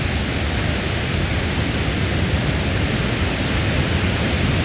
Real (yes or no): yes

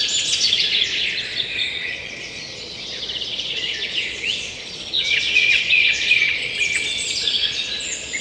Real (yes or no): no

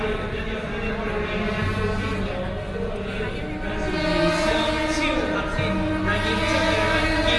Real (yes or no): yes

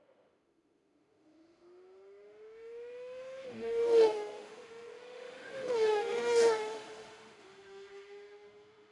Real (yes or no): no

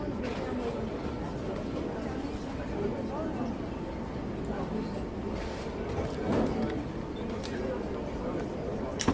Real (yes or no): yes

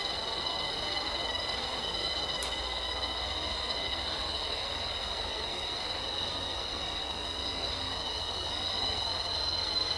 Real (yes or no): no